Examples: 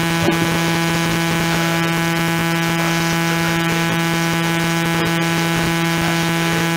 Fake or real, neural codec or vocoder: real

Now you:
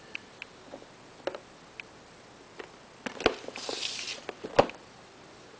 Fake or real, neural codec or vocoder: real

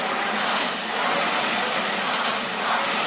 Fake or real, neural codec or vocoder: real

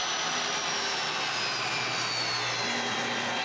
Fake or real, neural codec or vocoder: real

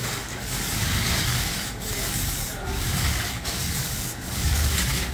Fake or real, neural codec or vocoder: fake, codec, DAC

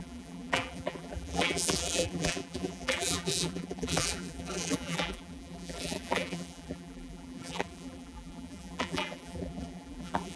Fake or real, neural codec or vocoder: fake, vocoder, BigVGAN v2